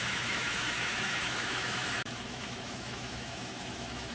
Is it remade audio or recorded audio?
remade